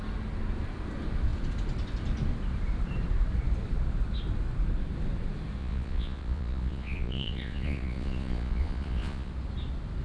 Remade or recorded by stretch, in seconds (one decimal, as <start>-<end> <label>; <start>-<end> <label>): 0.0-5.6 recorded; 5.6-9.3 remade; 9.3-10.0 recorded